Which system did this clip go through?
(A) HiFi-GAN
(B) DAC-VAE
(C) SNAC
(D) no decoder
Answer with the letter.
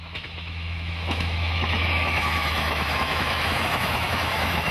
B